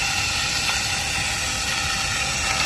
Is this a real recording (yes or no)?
yes